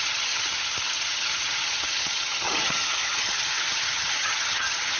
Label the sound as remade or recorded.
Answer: remade